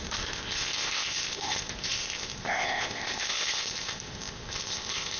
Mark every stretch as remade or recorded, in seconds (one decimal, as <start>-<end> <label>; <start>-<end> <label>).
0.0-5.2 remade